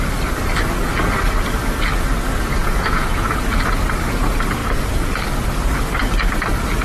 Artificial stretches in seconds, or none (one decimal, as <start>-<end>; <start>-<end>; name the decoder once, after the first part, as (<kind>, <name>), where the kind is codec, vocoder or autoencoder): 2.6-3.4 (vocoder, Vocos); 4.6-5.1